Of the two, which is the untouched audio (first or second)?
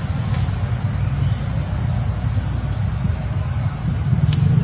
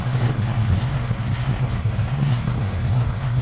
first